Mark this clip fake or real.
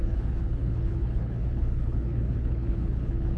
fake